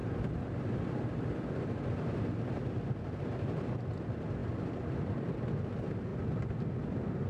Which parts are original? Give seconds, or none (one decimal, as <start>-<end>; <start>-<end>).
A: 3.2-4.4; 5.6-6.1